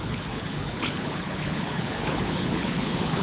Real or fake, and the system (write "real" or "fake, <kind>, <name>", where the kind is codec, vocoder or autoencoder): fake, codec, HILCodec